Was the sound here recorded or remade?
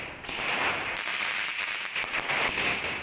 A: recorded